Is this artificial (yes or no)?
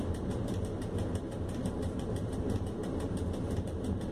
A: yes